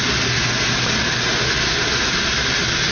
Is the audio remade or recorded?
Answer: recorded